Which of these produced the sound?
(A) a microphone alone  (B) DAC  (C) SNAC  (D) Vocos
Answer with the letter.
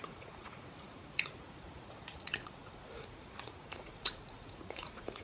D